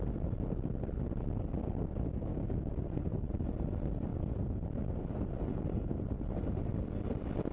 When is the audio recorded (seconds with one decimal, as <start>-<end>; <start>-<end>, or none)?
0.0-2.3; 3.5-4.1; 6.7-7.5